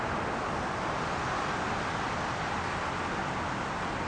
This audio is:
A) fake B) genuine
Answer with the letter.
B